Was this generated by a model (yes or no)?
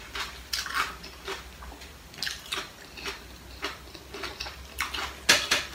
no